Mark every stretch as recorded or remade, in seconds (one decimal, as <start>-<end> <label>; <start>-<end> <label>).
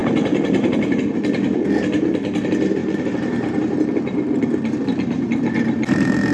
0.0-1.0 remade; 1.0-2.8 recorded; 2.8-5.5 remade; 5.5-6.3 recorded